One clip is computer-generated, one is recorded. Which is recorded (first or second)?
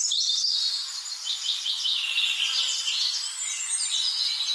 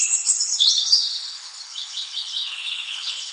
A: first